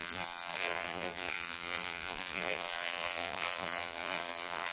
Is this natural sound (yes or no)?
no